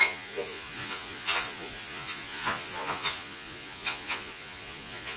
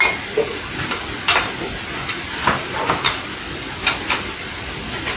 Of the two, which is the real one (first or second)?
second